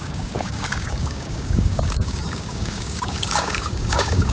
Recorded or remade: remade